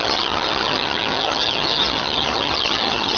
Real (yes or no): no